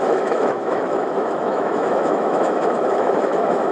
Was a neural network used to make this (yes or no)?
yes